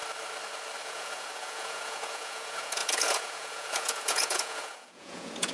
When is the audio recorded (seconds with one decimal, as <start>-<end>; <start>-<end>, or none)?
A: 0.0-0.8